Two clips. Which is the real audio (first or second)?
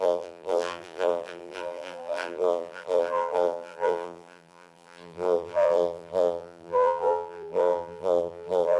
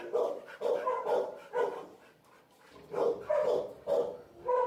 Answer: second